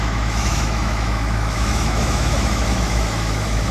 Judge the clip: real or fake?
fake